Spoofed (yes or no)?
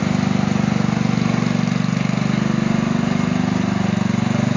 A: no